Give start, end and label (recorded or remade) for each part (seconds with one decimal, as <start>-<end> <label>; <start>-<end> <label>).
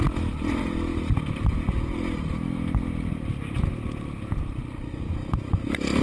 0.0-0.9 recorded; 0.9-3.6 remade; 3.6-6.0 recorded